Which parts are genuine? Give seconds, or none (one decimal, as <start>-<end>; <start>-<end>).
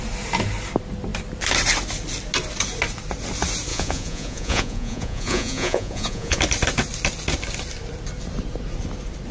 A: 0.0-3.7; 6.4-9.3